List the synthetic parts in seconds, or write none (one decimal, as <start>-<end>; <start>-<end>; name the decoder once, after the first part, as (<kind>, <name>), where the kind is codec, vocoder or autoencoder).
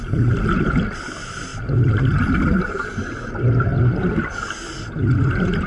none